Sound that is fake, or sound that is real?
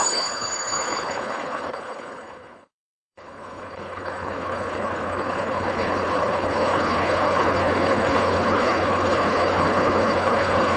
fake